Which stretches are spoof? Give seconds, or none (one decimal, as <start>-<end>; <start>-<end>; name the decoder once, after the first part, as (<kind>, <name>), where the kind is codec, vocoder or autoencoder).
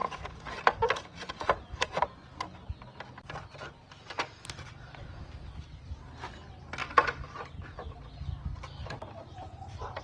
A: 0.0-2.0 (vocoder, BigVGAN v2); 6.8-7.3